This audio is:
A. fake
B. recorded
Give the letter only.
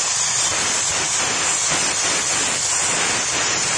B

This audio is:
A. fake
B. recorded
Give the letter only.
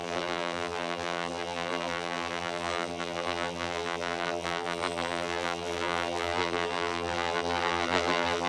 A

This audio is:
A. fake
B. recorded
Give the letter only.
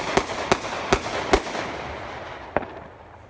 B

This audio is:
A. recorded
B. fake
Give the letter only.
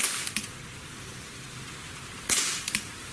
B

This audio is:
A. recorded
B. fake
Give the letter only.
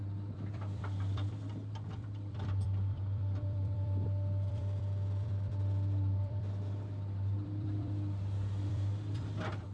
B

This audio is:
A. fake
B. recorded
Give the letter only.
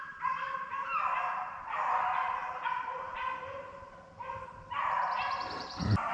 A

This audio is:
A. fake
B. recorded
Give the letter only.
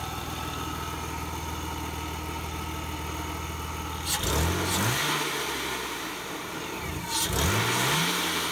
B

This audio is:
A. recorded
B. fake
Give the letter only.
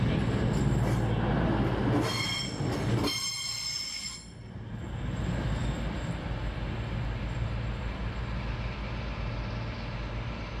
A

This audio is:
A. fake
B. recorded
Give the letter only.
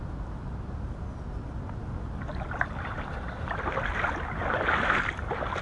B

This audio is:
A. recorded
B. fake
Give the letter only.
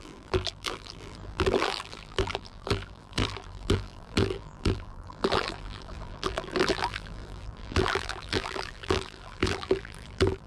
B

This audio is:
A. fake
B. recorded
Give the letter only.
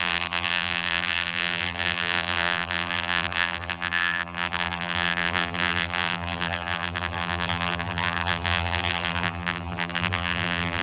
A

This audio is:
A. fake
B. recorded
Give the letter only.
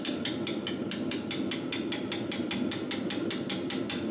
B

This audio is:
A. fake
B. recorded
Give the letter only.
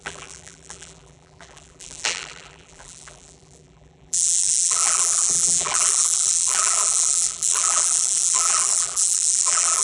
A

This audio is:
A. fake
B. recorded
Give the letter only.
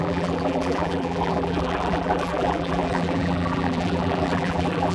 A